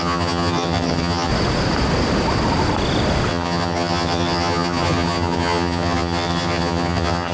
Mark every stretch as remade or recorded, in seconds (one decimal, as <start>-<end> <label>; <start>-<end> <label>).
0.0-1.3 remade; 1.3-3.3 recorded; 3.3-7.3 remade